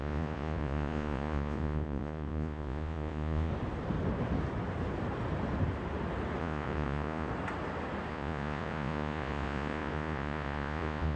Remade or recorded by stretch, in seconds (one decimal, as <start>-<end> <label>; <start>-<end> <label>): 0.0-3.5 remade; 3.5-6.4 recorded; 6.4-7.3 remade; 7.3-8.1 recorded; 8.1-11.2 remade